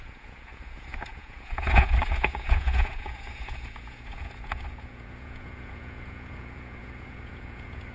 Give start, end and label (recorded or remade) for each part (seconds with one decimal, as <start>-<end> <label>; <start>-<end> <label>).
0.0-7.9 remade